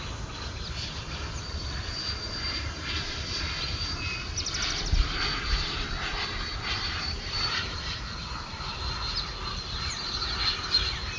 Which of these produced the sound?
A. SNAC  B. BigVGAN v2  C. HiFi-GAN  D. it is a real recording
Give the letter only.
D